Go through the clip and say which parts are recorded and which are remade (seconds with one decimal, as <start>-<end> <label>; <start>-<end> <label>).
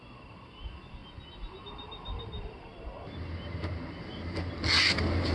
0.0-5.3 recorded